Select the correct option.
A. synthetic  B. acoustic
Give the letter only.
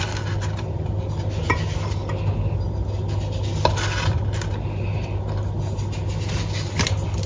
B